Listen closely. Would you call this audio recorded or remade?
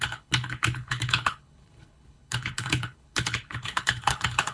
remade